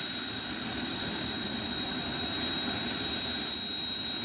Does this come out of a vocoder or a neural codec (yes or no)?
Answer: no